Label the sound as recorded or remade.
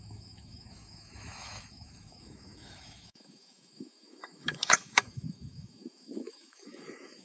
remade